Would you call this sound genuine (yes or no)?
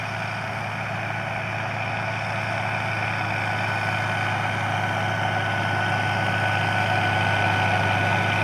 yes